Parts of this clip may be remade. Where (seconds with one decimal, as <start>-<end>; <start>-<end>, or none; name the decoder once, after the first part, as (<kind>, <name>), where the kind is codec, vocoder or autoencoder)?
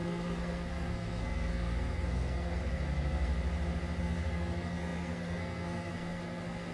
0.0-3.3 (codec, SNAC); 4.0-6.7